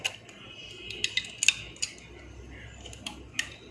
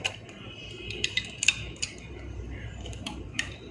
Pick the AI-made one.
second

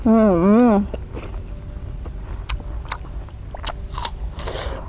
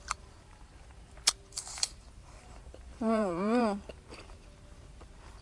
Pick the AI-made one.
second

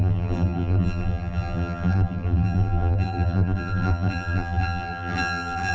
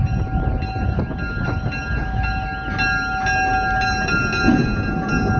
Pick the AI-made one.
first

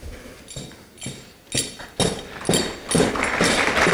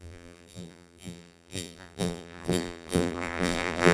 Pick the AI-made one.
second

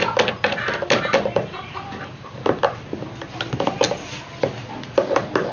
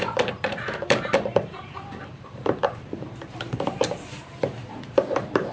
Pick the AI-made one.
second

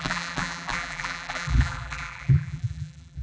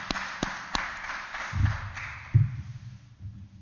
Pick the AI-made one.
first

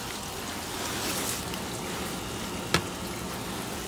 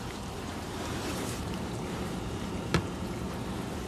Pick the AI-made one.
second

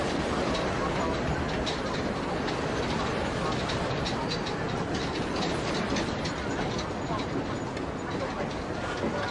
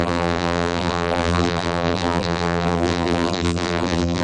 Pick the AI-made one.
second